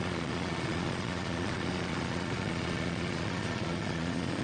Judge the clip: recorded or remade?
remade